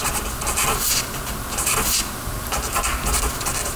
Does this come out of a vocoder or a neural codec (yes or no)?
no